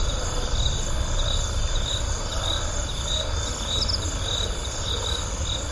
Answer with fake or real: real